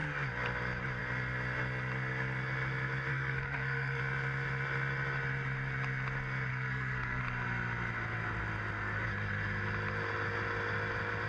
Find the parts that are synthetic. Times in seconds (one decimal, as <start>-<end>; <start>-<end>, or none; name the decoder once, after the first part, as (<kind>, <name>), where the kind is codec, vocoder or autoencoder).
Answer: 3.1-4.0 (codec, SNAC); 6.5-7.2